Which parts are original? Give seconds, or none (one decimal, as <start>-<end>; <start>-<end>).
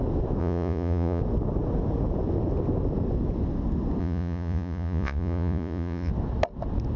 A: 0.0-0.4; 1.2-4.0; 6.1-7.0